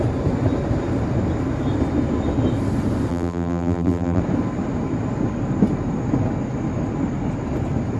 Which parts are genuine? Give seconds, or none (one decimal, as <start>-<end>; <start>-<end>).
0.0-3.1; 4.2-8.0